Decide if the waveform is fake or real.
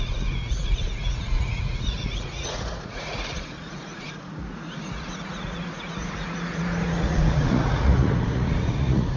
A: fake